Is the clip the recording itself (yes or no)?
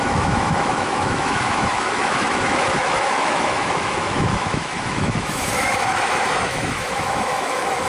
no